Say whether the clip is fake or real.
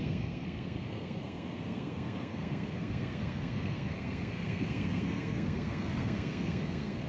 fake